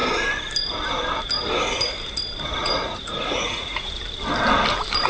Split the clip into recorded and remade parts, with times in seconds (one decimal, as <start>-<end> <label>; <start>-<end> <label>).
0.0-2.6 recorded; 2.6-4.0 remade; 4.0-5.1 recorded